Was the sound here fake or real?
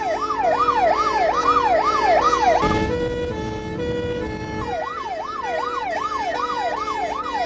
real